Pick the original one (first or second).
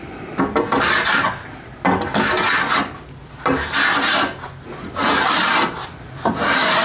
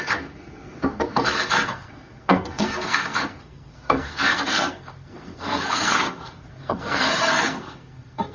first